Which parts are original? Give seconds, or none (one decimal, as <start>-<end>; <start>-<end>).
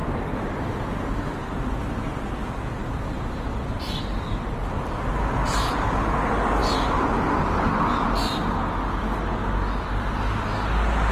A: 1.3-2.8; 5.0-11.1